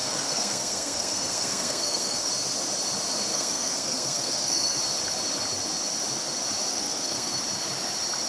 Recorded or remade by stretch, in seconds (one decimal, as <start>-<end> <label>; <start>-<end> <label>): 0.0-2.3 remade; 2.3-3.3 recorded; 3.3-4.8 remade; 4.8-6.7 recorded; 6.7-7.4 remade; 7.4-8.3 recorded

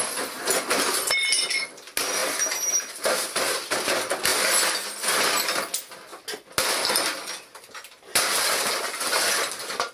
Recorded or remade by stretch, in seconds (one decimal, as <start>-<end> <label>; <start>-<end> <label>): 0.0-2.2 recorded; 2.2-3.6 remade; 3.6-9.9 recorded

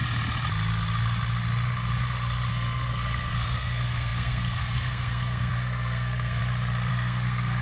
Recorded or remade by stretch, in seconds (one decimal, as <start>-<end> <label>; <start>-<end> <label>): 0.0-2.5 recorded; 2.5-6.4 remade; 6.4-6.9 recorded; 6.9-7.6 remade

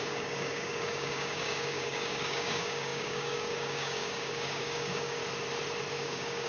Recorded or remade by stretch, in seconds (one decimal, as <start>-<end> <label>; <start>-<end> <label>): 0.0-5.2 remade; 5.2-5.9 recorded; 5.9-6.5 remade

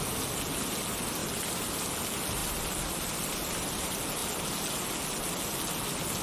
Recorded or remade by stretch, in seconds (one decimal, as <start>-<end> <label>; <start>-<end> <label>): 0.0-6.2 recorded

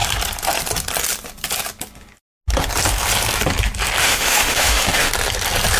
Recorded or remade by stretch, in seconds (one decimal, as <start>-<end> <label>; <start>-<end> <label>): 0.0-4.0 recorded; 4.0-5.1 remade; 5.1-5.8 recorded